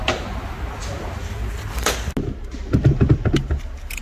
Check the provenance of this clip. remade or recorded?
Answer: recorded